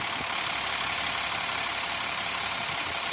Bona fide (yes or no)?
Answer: yes